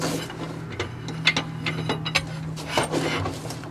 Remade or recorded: recorded